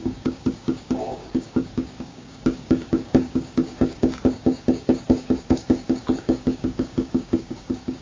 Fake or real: fake